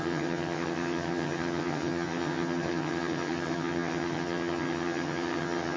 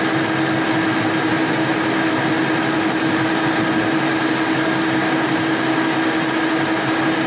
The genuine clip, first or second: second